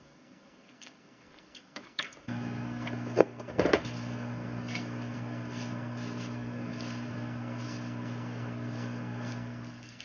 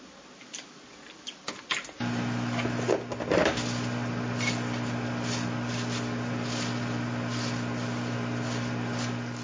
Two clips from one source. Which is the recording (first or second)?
second